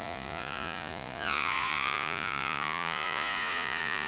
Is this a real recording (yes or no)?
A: no